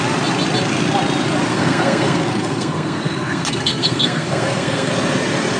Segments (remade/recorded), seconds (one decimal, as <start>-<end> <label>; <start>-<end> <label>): 0.0-1.5 recorded; 1.5-4.9 remade; 4.9-5.6 recorded